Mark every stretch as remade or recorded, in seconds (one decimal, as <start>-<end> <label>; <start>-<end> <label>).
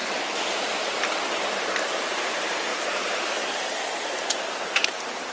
0.0-5.3 recorded